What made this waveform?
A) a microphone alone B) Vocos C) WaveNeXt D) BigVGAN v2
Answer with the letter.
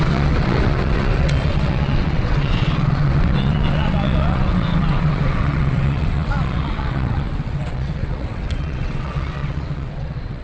C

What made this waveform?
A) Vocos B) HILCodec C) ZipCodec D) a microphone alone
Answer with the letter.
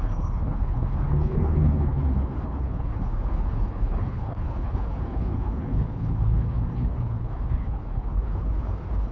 B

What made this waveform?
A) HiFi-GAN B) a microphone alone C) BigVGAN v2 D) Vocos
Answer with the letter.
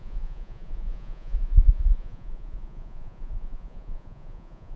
D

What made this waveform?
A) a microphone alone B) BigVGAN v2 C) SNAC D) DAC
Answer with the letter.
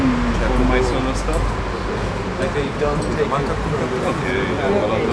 A